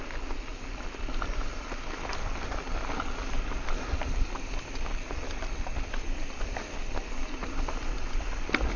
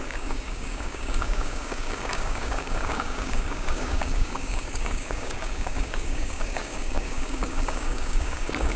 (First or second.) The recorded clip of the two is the first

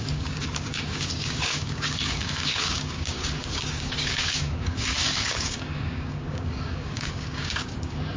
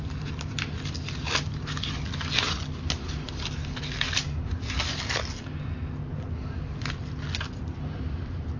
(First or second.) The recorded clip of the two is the second